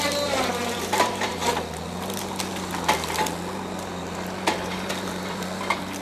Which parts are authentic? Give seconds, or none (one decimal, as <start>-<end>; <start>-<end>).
1.3-4.9